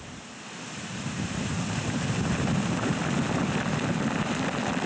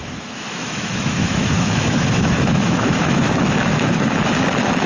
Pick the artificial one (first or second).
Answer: second